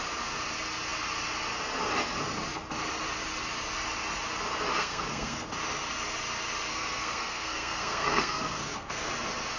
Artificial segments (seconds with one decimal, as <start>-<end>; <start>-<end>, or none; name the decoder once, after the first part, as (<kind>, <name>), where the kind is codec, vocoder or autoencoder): 4.8-5.5 (codec, SNAC); 6.7-9.1